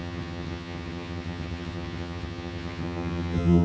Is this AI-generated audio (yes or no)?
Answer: yes